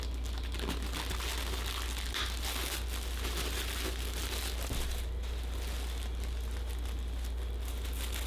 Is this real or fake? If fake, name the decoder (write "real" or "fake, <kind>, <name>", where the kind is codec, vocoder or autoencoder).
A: real